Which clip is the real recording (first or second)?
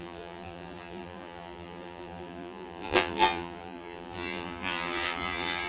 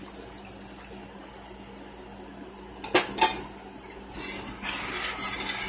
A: second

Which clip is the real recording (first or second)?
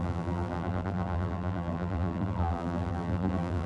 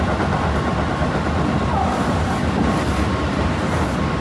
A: second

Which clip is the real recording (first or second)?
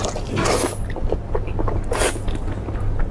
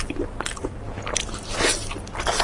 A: first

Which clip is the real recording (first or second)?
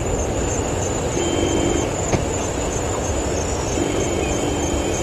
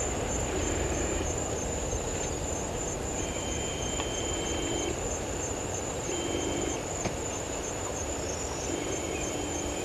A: first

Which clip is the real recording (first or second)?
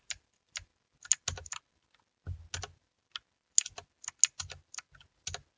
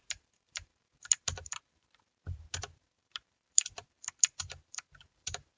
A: first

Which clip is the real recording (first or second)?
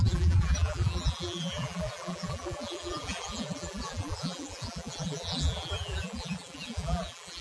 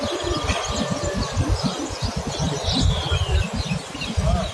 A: second